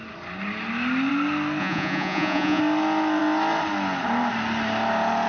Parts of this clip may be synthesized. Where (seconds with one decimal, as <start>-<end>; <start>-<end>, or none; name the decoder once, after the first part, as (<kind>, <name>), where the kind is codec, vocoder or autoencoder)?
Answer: 1.6-2.6 (vocoder, Vocos)